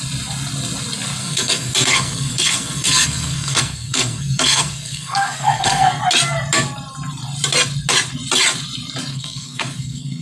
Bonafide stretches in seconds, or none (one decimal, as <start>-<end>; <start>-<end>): 0.0-1.2; 6.0-9.1